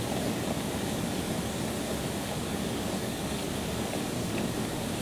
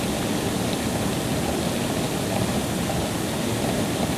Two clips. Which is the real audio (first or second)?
second